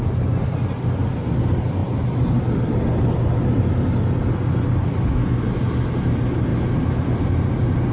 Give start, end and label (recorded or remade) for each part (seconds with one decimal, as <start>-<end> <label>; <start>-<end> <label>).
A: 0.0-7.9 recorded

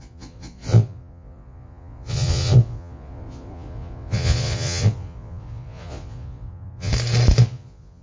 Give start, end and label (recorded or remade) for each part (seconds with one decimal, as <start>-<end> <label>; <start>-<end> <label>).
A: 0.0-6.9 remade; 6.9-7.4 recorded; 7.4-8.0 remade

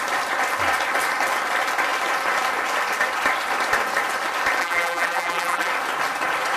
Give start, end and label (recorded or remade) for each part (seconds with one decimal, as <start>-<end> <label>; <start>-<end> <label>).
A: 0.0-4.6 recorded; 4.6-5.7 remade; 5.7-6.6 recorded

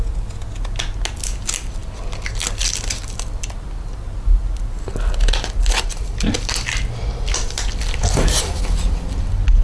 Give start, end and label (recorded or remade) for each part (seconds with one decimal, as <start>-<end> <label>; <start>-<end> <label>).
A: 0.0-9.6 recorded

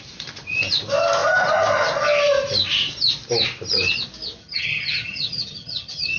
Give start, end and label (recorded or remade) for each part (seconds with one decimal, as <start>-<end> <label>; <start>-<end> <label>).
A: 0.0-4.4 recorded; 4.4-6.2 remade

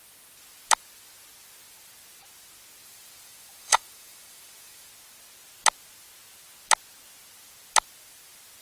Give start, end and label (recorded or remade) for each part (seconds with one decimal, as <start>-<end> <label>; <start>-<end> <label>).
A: 0.0-2.8 recorded; 2.8-4.9 remade; 4.9-8.6 recorded